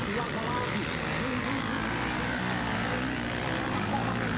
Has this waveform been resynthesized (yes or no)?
no